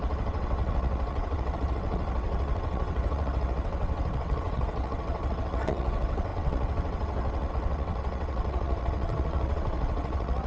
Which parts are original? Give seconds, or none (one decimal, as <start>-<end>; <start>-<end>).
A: none